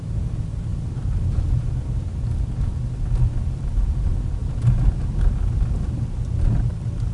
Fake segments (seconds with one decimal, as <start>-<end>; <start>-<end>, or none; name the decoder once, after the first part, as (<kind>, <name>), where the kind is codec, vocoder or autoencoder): 0.7-2.2 (vocoder, BigVGAN v2)